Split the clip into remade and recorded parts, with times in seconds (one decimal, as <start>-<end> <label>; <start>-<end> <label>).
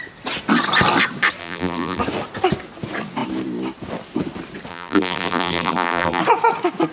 0.0-1.4 recorded; 1.4-2.0 remade; 2.0-4.7 recorded; 4.7-6.2 remade; 6.2-6.9 recorded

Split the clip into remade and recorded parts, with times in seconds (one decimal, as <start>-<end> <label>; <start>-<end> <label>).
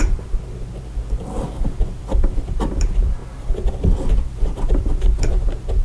0.0-5.8 remade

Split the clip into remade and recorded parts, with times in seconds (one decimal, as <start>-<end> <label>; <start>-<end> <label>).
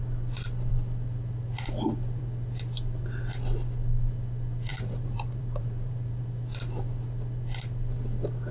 0.0-4.7 recorded; 4.7-6.1 remade; 6.1-8.5 recorded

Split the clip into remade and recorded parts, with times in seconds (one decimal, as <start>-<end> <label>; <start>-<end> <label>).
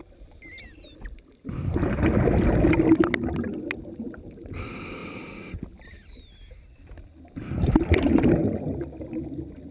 0.0-9.7 recorded